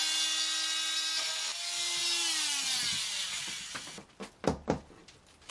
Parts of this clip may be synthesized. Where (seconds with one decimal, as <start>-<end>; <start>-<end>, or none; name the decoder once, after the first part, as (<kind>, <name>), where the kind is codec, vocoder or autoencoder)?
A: none